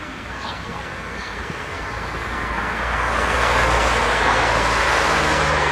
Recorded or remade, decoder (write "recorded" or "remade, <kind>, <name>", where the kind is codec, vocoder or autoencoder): remade, codec, SNAC